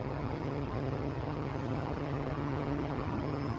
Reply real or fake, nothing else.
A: fake